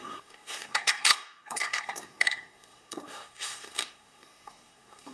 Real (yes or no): no